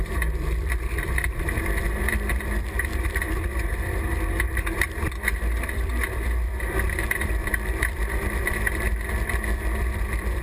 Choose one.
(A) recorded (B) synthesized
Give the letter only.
B